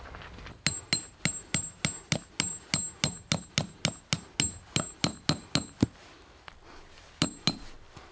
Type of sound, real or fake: real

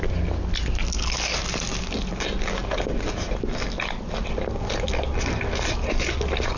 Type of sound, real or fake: real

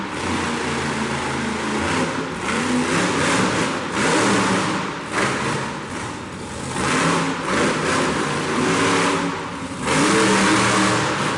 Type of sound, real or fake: real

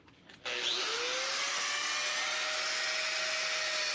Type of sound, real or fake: real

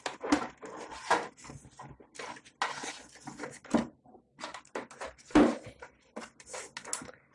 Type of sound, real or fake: real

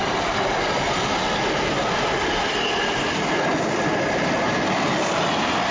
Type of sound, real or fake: real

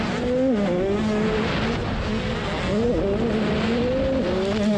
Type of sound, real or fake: real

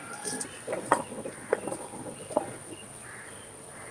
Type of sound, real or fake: fake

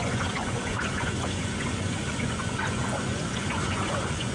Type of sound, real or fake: fake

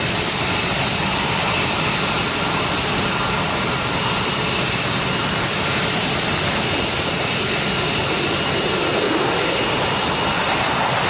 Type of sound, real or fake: real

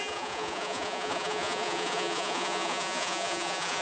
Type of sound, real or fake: fake